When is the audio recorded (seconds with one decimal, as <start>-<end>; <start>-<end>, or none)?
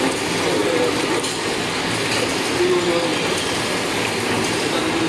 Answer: 0.0-5.1